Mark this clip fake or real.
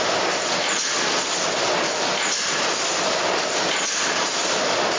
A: real